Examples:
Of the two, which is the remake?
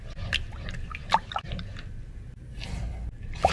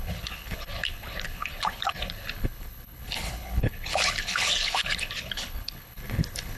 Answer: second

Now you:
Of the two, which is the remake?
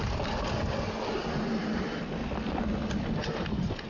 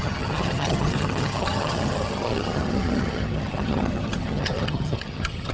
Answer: second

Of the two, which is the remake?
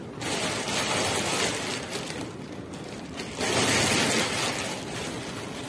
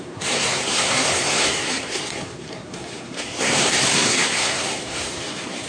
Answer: second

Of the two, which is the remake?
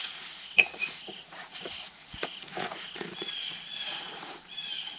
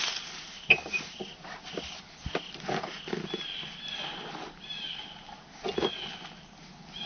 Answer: first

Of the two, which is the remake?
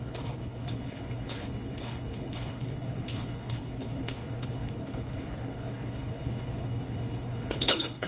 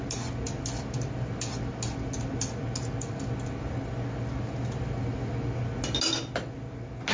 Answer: first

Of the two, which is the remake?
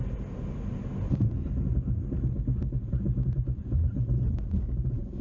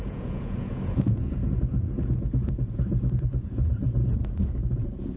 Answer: second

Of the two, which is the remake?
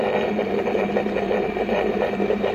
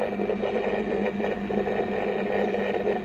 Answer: first